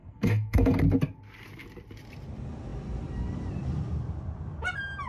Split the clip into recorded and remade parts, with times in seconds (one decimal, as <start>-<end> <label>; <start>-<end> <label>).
0.0-0.8 remade; 0.8-5.1 recorded